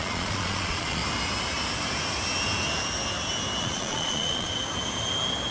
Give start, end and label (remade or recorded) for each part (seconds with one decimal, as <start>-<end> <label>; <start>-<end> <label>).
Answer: 0.0-1.0 remade; 1.0-3.6 recorded; 3.6-4.5 remade; 4.5-5.5 recorded